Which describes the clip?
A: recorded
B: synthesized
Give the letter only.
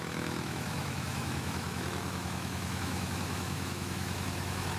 B